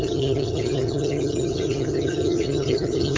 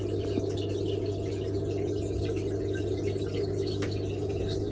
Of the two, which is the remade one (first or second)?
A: first